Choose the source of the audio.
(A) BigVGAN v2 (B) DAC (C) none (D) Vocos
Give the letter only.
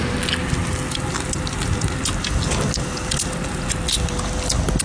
C